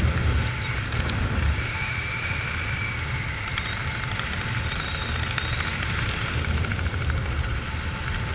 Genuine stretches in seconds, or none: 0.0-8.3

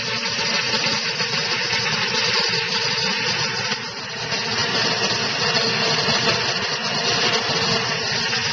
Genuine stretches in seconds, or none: 0.0-8.5

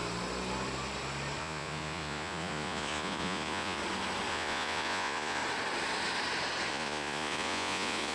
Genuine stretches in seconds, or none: 0.0-1.4; 3.8-4.3; 5.4-6.7

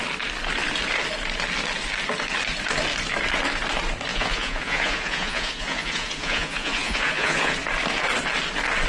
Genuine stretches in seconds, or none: 0.0-4.1; 7.5-8.9